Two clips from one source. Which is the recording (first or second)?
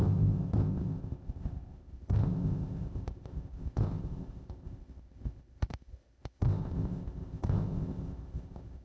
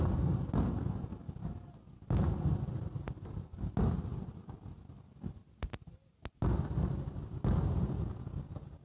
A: second